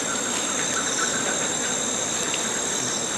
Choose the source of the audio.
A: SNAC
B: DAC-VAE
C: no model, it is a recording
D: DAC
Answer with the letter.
C